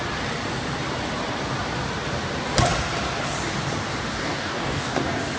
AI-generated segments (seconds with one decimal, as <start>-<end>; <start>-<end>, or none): 4.1-4.9